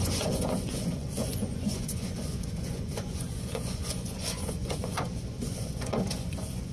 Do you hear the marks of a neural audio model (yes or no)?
yes